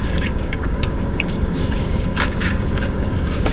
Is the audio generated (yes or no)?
yes